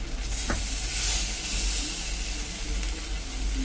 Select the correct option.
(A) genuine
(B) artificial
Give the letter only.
A